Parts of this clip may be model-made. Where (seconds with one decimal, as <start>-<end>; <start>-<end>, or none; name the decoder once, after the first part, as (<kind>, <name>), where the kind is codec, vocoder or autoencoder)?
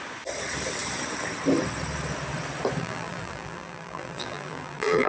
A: 2.8-5.1 (vocoder, BigVGAN v2)